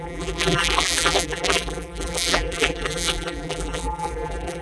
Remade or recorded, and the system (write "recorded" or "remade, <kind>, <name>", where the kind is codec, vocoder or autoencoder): remade, vocoder, BigVGAN v2